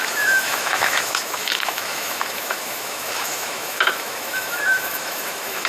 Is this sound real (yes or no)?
no